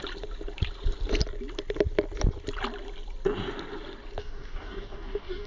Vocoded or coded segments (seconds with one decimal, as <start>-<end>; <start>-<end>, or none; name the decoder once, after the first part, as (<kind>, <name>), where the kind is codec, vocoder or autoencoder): 4.2-5.5 (codec, DAC)